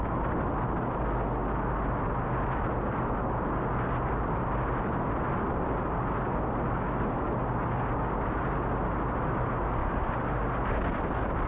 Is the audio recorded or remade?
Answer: recorded